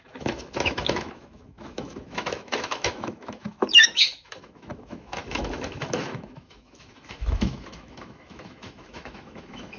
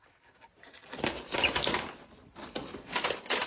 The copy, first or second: first